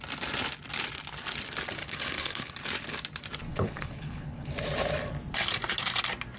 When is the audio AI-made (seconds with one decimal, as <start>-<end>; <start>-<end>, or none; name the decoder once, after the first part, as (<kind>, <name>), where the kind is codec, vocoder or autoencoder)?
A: 1.8-2.5 (codec, HILCodec); 3.5-4.5